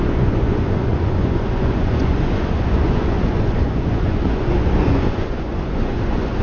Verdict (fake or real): fake